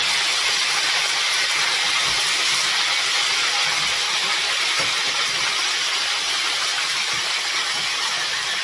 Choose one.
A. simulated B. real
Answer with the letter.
B